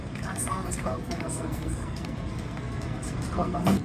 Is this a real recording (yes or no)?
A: no